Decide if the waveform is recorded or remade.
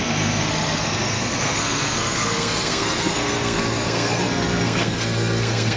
remade